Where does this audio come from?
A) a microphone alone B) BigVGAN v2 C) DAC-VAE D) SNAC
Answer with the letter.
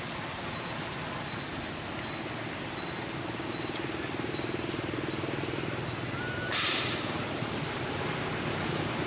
A